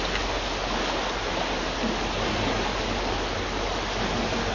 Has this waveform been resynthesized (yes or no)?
no